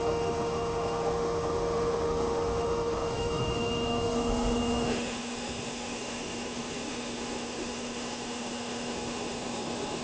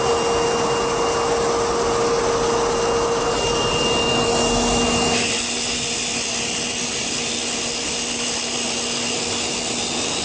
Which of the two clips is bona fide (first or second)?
second